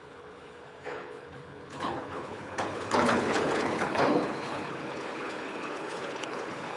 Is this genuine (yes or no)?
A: no